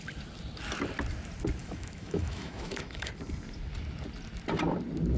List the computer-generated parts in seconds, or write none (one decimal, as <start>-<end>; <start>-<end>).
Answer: 1.6-3.1